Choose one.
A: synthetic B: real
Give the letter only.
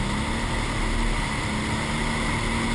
B